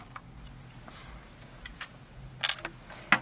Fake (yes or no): no